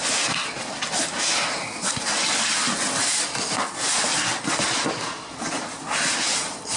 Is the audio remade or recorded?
recorded